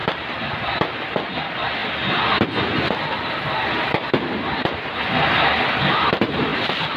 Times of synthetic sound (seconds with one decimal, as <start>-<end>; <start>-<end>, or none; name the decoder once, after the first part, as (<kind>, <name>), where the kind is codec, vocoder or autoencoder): 0.0-0.6 (vocoder, BigVGAN v2); 6.5-7.0